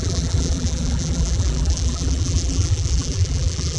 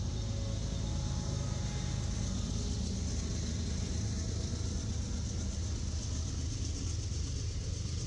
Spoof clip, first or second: first